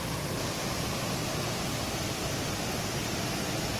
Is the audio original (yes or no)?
yes